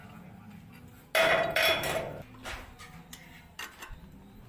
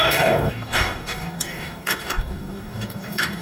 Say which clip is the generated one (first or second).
second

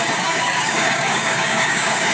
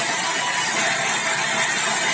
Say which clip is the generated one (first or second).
first